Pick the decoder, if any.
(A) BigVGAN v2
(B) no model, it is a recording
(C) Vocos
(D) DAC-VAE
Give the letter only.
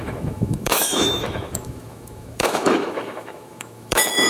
D